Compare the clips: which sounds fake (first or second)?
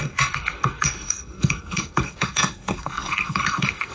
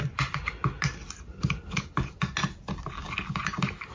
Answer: first